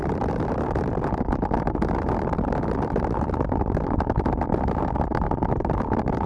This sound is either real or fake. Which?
real